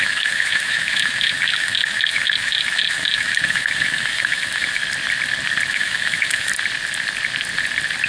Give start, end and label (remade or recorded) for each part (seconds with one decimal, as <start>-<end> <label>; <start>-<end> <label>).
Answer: 0.0-4.8 remade; 4.8-5.7 recorded; 5.7-6.5 remade; 6.5-8.1 recorded